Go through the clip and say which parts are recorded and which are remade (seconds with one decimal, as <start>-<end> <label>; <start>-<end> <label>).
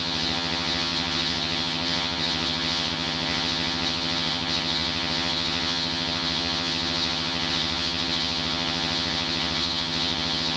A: 0.0-10.6 remade